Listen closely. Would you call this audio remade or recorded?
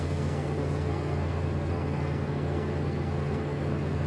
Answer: remade